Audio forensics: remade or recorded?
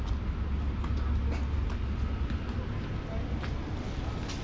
recorded